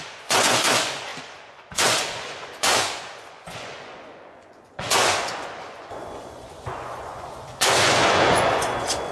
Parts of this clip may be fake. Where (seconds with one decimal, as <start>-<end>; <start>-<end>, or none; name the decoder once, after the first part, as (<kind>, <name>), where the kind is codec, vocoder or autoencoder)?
0.0-9.1 (vocoder, Vocos)